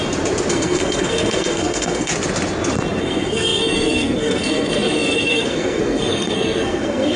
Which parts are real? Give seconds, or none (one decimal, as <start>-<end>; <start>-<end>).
0.0-0.5; 2.1-3.0